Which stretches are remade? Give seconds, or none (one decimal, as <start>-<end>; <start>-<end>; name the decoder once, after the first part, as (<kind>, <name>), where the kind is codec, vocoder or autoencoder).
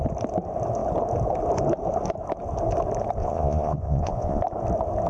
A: 3.2-4.4 (vocoder, Vocos)